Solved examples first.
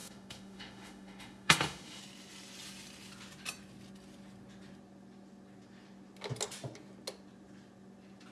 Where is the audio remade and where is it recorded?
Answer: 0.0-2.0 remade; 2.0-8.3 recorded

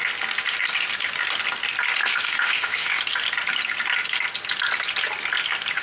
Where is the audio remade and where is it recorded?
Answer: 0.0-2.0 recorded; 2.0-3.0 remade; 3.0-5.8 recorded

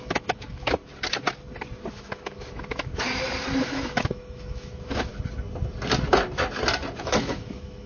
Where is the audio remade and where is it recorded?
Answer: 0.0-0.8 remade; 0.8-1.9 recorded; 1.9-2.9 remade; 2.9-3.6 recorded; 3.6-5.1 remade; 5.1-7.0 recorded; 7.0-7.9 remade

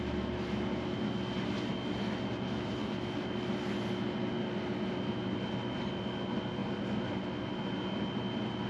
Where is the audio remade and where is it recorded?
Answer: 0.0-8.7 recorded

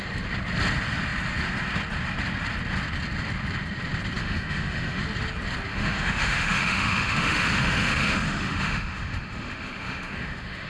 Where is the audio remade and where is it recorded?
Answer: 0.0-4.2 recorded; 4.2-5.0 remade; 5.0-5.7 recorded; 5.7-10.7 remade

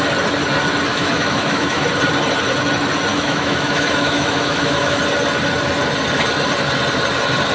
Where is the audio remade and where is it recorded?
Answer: 0.0-0.9 recorded; 0.9-1.8 remade; 1.8-3.1 recorded; 3.1-5.0 remade; 5.0-7.5 recorded

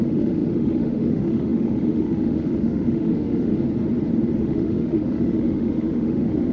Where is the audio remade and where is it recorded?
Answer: 0.0-3.5 remade; 3.5-4.4 recorded; 4.4-6.5 remade

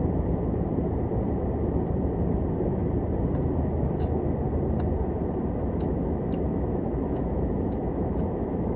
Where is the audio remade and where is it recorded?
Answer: 0.0-5.6 recorded; 5.6-8.8 remade